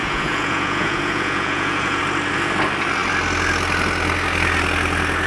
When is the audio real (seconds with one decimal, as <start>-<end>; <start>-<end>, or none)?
2.0-5.3